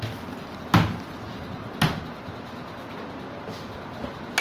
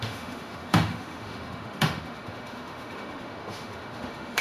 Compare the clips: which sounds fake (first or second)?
second